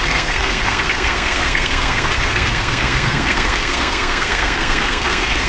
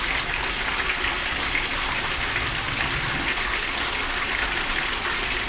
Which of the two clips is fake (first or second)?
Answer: first